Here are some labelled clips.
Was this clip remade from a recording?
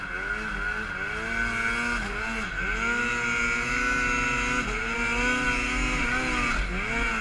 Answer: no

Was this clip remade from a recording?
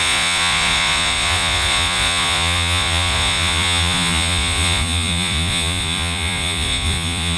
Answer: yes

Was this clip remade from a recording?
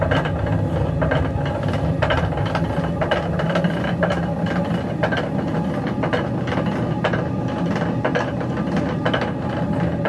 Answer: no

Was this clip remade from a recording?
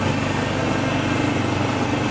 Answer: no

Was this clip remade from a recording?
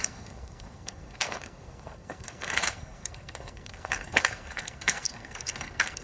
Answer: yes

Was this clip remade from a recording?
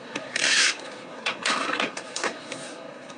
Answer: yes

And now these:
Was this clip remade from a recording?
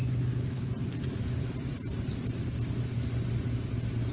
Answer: no